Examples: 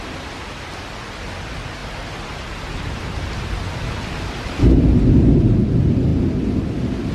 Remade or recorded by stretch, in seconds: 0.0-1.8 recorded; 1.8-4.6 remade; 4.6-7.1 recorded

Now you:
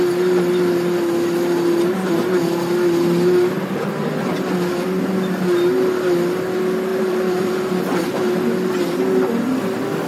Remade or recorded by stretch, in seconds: 0.0-6.9 recorded; 6.9-7.7 remade; 7.7-10.1 recorded

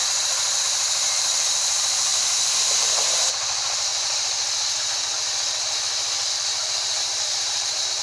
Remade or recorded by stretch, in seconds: 0.0-0.6 recorded; 0.6-3.9 remade; 3.9-6.3 recorded; 6.3-8.0 remade

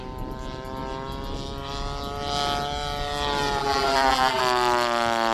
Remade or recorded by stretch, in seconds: 0.0-3.6 recorded; 3.6-4.4 remade; 4.4-5.3 recorded